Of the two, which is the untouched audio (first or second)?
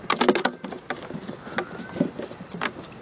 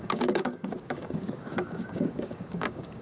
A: first